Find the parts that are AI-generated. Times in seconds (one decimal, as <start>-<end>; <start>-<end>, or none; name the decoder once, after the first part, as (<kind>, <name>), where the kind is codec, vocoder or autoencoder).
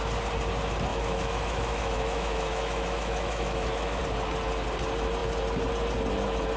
0.9-4.0 (autoencoder, DAC-VAE)